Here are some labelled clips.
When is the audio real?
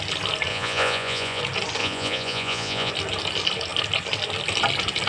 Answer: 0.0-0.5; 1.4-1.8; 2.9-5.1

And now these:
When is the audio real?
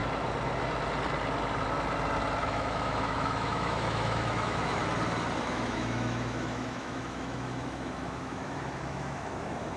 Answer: 0.0-2.4; 4.8-5.4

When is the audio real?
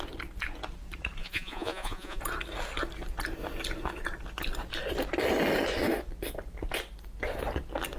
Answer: 0.0-1.2; 2.2-8.0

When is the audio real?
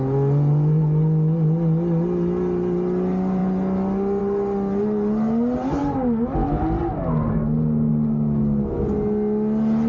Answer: 0.0-7.9; 8.4-9.9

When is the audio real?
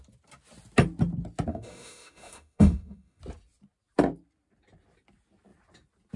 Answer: 0.0-1.5; 3.2-6.2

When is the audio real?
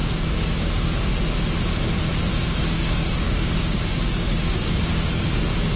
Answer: 1.1-2.3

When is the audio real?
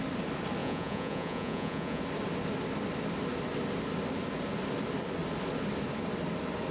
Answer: 0.0-0.6; 2.0-6.7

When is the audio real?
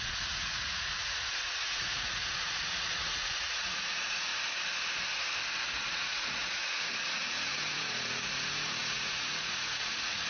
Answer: 4.3-5.6